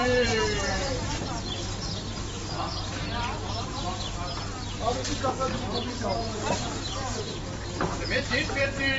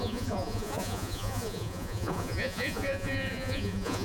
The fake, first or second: second